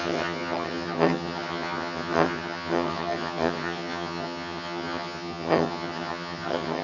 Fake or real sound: fake